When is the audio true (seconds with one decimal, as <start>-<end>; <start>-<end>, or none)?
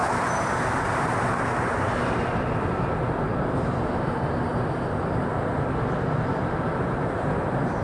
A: 0.0-3.3; 4.4-7.8